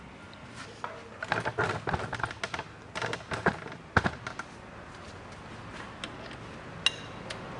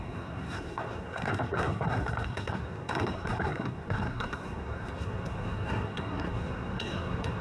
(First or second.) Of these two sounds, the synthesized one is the second